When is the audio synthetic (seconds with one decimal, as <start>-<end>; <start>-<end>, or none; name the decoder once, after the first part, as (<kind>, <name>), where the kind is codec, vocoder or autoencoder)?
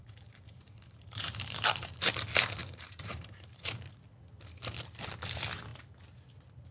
0.0-1.9 (vocoder, BigVGAN v2); 2.6-3.9